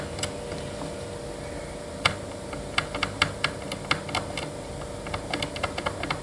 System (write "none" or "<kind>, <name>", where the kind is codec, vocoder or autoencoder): vocoder, BigVGAN v2